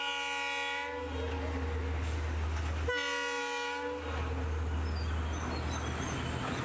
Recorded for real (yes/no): yes